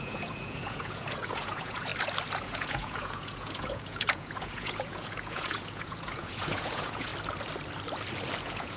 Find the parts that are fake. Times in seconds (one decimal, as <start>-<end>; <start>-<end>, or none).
0.0-1.9; 2.4-7.1; 8.4-8.8